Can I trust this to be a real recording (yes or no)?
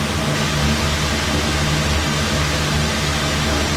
yes